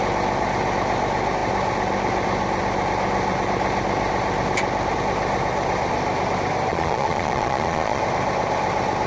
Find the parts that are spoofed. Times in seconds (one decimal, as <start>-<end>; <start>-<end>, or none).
6.7-8.0